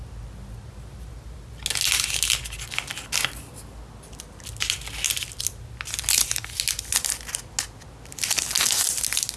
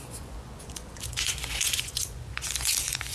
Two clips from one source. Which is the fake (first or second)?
second